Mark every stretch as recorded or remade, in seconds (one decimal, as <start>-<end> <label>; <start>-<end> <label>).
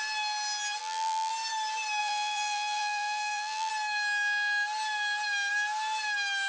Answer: 0.0-0.8 recorded; 0.8-1.3 remade; 1.3-2.0 recorded; 2.0-3.7 remade; 3.7-6.5 recorded